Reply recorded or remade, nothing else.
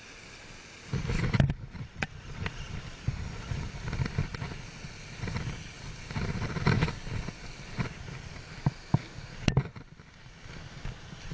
recorded